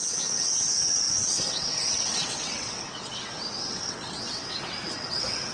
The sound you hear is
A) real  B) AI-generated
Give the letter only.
B